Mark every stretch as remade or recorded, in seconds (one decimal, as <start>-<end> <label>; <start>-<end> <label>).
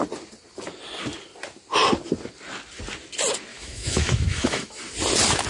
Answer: 0.0-3.5 recorded; 3.5-4.8 remade; 4.8-5.5 recorded